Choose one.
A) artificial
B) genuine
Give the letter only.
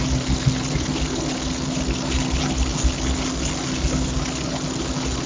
B